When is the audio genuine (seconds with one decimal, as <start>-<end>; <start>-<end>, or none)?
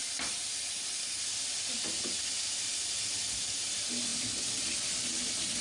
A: 2.7-4.1; 4.7-5.6